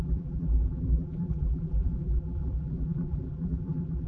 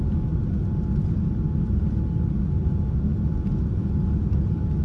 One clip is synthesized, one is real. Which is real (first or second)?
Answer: second